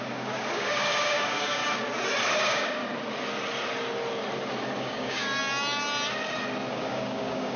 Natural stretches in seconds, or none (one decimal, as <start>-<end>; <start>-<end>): 1.6-2.4; 2.8-4.8; 5.4-6.7